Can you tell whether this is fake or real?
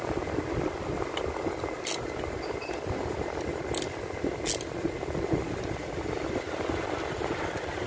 real